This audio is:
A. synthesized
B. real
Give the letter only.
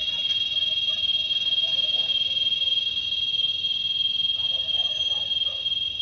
B